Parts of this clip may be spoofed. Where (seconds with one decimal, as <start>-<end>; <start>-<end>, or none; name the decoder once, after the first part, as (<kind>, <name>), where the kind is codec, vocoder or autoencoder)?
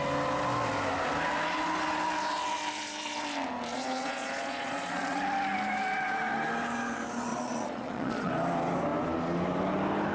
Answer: 3.7-5.2 (vocoder, Vocos); 7.3-8.3